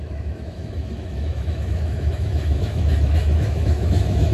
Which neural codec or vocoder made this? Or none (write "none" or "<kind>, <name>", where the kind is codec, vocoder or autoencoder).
autoencoder, DAC-VAE